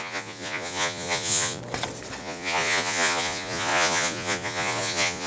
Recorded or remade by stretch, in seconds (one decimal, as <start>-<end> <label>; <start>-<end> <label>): 0.0-1.6 remade; 1.6-2.2 recorded; 2.2-5.3 remade